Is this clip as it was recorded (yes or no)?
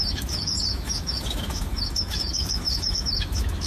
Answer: no